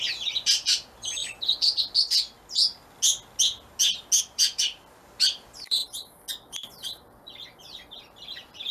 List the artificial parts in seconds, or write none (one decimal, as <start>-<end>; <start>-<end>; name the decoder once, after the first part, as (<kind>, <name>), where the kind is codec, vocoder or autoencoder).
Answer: 0.0-1.2 (vocoder, BigVGAN v2); 4.2-5.8; 6.3-8.7